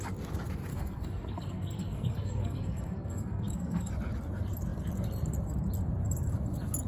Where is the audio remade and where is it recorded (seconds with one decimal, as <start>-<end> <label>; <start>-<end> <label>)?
0.0-0.7 recorded; 0.7-3.9 remade; 3.9-6.9 recorded